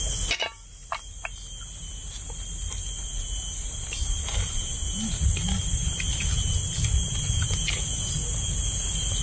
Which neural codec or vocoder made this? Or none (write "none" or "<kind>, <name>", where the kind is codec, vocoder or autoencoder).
none